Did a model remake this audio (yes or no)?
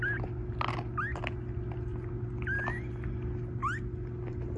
no